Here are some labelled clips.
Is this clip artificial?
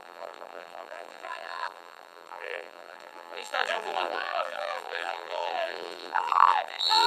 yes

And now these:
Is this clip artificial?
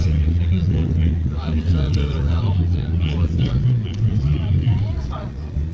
yes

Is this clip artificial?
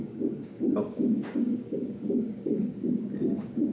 yes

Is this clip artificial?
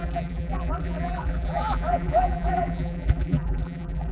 yes